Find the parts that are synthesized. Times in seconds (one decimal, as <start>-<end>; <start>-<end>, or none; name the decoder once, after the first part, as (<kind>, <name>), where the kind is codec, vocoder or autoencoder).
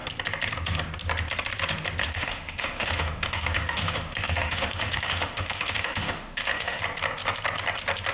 2.0-6.8 (autoencoder, DAC-VAE)